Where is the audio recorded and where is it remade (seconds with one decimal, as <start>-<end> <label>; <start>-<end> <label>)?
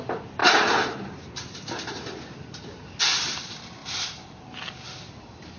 0.0-0.4 recorded; 0.4-2.9 remade; 2.9-5.6 recorded